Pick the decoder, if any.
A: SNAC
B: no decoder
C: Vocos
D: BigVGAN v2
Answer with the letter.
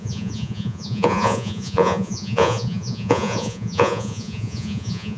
C